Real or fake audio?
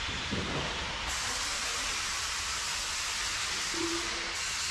real